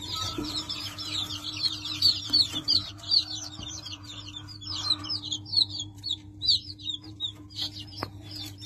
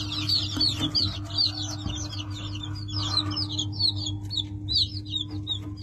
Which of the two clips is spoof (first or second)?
first